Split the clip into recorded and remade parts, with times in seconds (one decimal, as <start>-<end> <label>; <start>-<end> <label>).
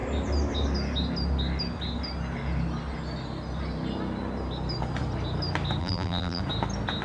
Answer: 0.0-5.8 recorded; 5.8-6.4 remade; 6.4-7.0 recorded